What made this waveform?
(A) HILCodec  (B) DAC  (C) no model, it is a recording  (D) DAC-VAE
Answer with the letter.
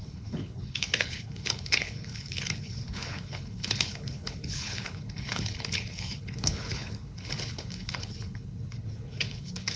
A